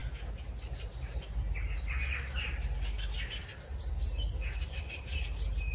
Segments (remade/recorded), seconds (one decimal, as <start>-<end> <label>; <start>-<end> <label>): 0.0-5.7 recorded